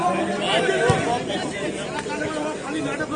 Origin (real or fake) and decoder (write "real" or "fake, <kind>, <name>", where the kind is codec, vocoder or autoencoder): real